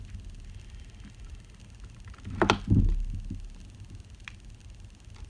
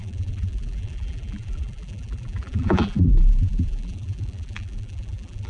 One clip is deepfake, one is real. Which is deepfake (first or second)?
second